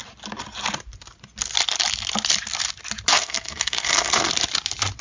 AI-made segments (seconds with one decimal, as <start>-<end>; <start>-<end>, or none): 3.1-4.3